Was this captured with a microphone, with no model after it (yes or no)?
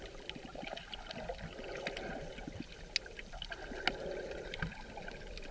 yes